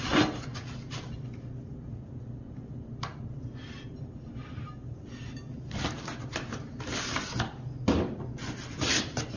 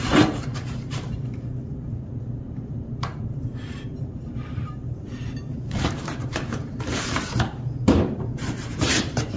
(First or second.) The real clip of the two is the first